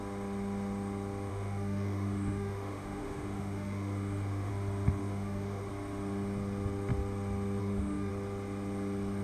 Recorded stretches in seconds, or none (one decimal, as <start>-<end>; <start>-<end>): 0.0-1.3; 4.5-5.0; 5.7-7.6; 8.1-9.2